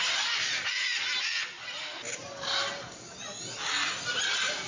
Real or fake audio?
real